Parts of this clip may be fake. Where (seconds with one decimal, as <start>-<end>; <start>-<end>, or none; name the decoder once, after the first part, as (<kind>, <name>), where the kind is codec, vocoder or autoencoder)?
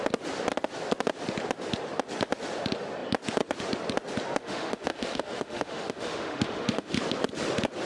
4.4-7.0 (autoencoder, DAC-VAE)